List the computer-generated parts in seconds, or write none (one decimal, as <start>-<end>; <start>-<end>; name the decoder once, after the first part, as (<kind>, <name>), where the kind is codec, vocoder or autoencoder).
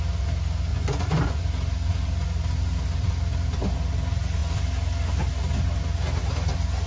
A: 0.7-1.4 (vocoder, Vocos)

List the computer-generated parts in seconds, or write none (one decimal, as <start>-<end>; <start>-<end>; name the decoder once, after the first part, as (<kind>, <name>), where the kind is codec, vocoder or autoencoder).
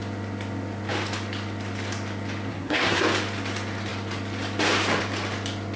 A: 2.5-3.0 (codec, SNAC)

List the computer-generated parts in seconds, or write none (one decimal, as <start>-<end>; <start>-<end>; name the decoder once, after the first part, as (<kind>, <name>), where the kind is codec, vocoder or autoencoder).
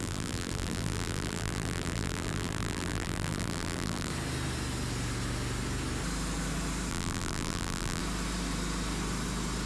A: 0.0-4.1 (vocoder, BigVGAN v2); 6.9-8.0